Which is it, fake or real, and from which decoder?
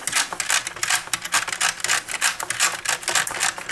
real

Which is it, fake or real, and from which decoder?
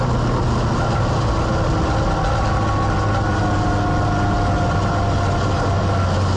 real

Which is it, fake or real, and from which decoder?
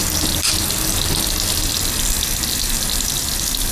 real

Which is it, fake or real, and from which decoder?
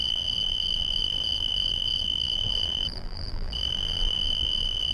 fake, vocoder, BigVGAN v2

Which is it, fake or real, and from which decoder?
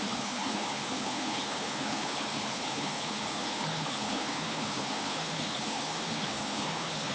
fake, codec, HILCodec